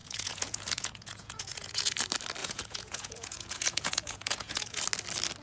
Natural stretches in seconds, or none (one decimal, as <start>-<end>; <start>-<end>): 2.0-2.4; 4.8-5.4